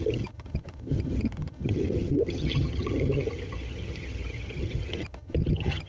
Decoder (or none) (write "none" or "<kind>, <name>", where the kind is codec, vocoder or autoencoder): vocoder, HiFi-GAN